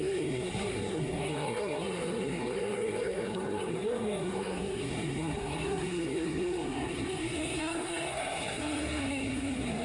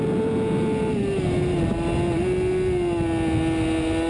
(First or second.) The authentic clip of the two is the second